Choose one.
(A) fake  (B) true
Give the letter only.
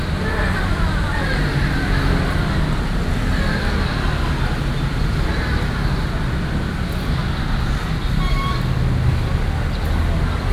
B